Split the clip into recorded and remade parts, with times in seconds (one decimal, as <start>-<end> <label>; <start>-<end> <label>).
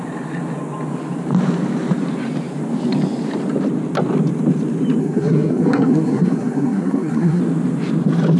0.0-5.0 recorded; 5.0-7.4 remade; 7.4-8.4 recorded